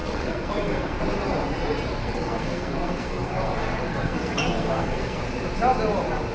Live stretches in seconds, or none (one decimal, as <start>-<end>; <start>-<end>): 1.0-2.0; 5.2-6.3